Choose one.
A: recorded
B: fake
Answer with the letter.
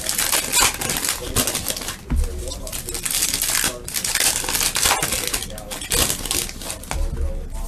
A